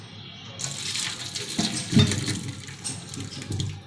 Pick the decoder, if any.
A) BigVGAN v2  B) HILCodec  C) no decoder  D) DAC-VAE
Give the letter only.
C